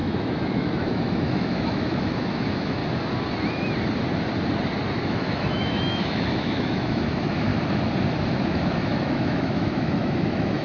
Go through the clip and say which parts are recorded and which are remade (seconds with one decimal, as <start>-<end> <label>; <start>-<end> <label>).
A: 0.0-2.8 remade; 2.8-5.0 recorded; 5.0-7.5 remade; 7.5-8.4 recorded; 8.4-10.6 remade